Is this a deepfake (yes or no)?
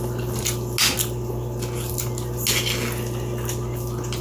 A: no